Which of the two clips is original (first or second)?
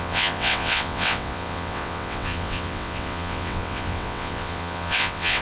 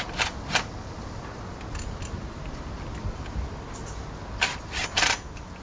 second